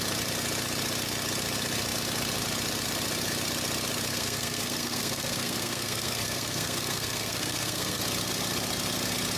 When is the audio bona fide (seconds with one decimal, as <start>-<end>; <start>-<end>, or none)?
0.0-4.1; 8.0-9.4